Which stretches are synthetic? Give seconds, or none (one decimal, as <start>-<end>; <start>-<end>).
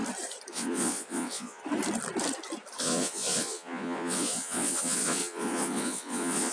0.5-1.6; 2.8-6.5